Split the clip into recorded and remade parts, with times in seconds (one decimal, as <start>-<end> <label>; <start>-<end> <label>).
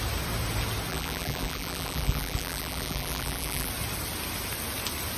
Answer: 0.0-0.9 recorded; 0.9-3.7 remade; 3.7-5.2 recorded